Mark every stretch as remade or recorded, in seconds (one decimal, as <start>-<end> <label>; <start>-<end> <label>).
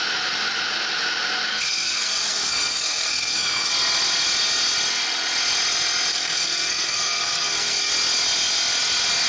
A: 0.0-1.5 recorded; 1.5-3.7 remade; 3.7-6.1 recorded; 6.1-7.9 remade; 7.9-9.3 recorded